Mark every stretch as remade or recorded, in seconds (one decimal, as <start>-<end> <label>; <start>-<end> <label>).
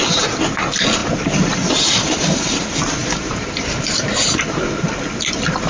0.0-1.0 recorded; 1.0-2.6 remade; 2.6-3.0 recorded; 3.0-4.9 remade; 4.9-5.7 recorded